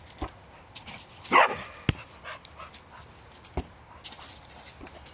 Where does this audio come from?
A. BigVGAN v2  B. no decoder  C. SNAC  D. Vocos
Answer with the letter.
B